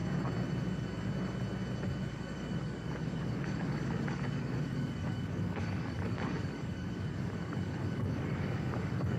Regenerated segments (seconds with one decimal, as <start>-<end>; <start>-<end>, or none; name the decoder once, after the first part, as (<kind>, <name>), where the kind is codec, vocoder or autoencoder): 2.1-9.2 (codec, DAC)